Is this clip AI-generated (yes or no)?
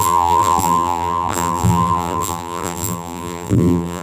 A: yes